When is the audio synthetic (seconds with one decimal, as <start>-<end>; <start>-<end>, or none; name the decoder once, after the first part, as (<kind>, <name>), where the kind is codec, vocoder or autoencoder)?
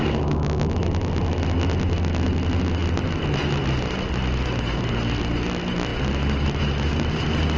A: none